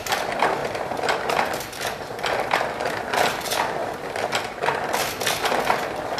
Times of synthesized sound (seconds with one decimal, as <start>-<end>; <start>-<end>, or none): 0.6-2.1; 3.8-4.4